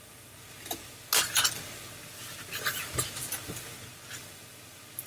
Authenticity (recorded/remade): recorded